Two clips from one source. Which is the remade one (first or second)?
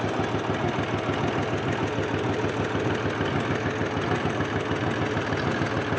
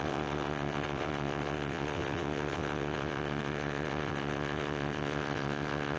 second